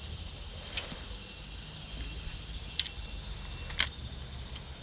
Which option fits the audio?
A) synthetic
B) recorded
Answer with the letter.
B